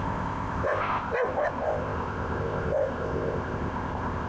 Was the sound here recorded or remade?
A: remade